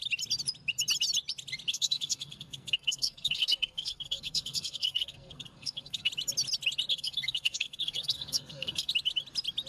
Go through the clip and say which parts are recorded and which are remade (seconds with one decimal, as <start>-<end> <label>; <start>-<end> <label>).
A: 0.0-1.7 recorded; 1.7-6.1 remade; 6.1-6.9 recorded; 6.9-8.9 remade; 8.9-9.7 recorded